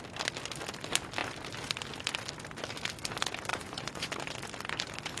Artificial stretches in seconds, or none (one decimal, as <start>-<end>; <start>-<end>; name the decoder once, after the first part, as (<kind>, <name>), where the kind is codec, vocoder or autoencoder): 3.5-4.1 (vocoder, Vocos)